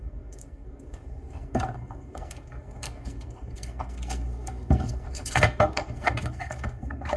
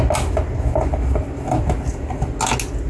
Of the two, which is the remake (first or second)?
first